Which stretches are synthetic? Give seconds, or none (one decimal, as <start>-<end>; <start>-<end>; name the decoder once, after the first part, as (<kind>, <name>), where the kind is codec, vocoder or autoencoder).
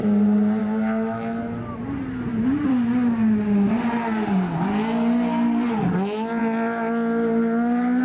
0.6-1.6 (autoencoder, DAC-VAE)